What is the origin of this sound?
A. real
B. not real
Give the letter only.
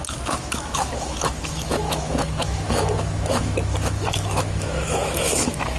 B